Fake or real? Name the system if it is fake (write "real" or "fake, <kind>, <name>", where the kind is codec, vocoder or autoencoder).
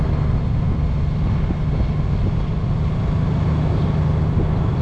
real